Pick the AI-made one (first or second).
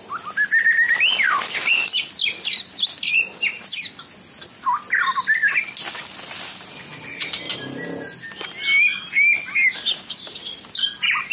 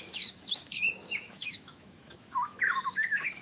second